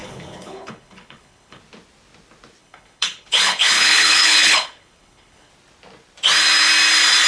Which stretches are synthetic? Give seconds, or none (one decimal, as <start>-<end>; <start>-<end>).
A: 0.0-1.6; 2.6-5.5